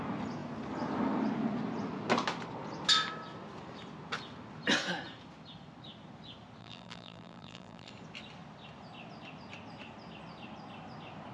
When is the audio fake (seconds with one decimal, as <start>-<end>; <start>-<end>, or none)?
6.6-7.9